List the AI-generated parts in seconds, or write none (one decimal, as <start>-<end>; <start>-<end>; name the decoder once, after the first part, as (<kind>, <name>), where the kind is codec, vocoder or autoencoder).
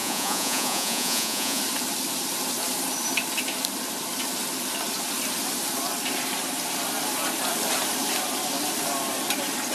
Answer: 0.0-1.6 (vocoder, Vocos)